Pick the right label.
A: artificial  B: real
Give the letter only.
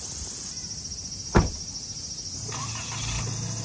B